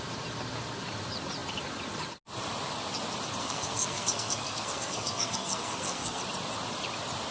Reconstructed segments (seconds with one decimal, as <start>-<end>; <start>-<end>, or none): 3.4-6.2

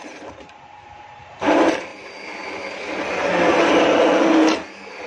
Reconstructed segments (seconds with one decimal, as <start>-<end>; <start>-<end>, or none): 0.0-1.9

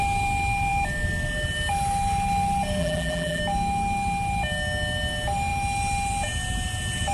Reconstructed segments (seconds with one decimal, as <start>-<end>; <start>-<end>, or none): 2.8-3.4

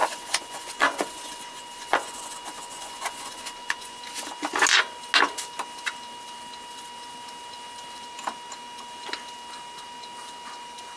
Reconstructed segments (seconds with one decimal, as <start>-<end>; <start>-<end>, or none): 0.0-4.0